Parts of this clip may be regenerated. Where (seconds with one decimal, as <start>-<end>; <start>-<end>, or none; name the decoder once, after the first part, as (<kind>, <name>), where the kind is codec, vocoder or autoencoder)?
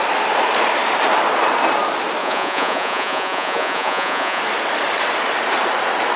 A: 2.2-4.4 (vocoder, Vocos)